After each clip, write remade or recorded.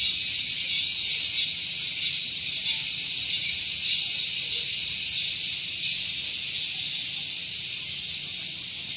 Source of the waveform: recorded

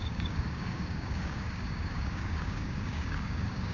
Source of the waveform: remade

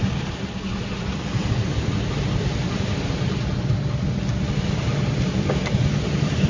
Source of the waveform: recorded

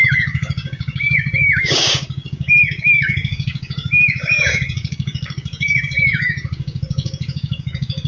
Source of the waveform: remade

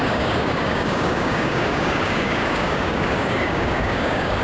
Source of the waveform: remade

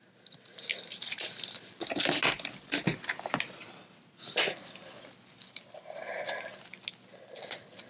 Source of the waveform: recorded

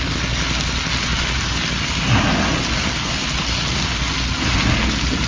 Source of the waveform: recorded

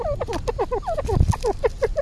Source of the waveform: recorded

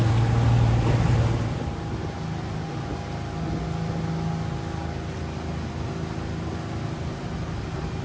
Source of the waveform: recorded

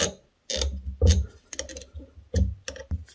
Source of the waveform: recorded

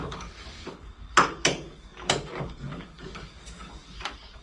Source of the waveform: remade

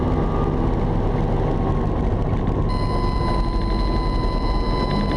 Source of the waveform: recorded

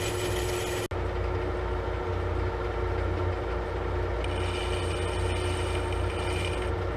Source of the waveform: recorded